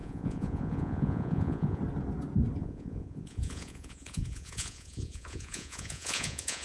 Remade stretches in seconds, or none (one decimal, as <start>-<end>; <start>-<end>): 0.0-1.8; 2.6-6.6